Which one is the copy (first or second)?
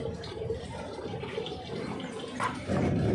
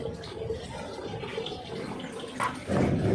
first